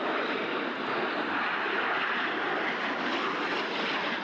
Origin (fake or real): real